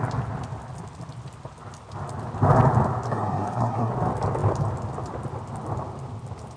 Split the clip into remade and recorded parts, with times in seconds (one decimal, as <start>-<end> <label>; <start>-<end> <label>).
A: 0.0-3.1 recorded; 3.1-3.9 remade; 3.9-6.6 recorded